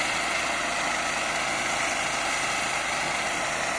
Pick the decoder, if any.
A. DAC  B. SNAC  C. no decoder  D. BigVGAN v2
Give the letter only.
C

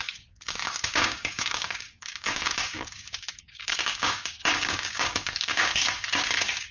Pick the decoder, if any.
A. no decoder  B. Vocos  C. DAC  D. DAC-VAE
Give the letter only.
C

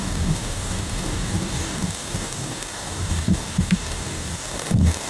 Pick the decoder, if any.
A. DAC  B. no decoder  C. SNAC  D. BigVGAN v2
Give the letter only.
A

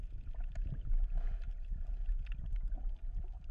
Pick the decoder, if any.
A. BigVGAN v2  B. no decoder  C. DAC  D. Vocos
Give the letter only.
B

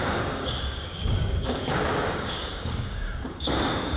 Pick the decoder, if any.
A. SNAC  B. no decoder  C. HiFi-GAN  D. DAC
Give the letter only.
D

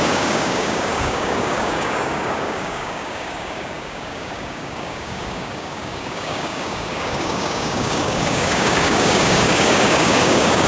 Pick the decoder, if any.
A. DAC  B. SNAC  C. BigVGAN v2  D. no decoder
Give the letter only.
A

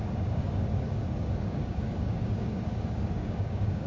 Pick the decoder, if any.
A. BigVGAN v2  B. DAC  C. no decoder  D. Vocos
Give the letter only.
B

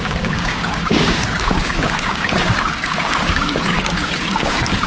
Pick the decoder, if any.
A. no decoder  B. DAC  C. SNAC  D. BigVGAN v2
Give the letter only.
B